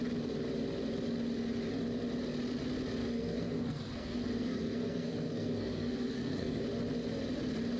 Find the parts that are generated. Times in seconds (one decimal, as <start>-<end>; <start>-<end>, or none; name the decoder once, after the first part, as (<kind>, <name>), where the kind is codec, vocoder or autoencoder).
3.0-6.6 (codec, SNAC)